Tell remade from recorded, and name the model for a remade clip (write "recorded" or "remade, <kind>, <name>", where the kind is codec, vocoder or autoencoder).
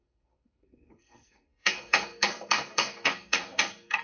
remade, codec, SNAC